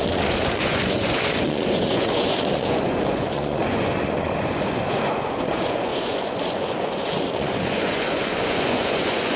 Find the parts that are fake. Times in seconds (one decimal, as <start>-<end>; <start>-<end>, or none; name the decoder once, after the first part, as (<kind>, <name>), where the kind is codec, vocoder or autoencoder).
0.0-9.4 (vocoder, Vocos)